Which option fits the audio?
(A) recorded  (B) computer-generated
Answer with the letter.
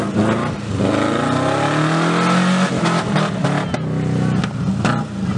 A